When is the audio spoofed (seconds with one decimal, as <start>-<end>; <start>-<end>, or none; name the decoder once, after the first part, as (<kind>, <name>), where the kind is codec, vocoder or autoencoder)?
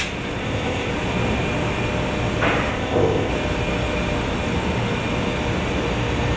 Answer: 0.4-0.9 (codec, ZipCodec); 2.7-3.3